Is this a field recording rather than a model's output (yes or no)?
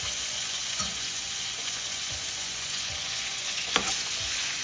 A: no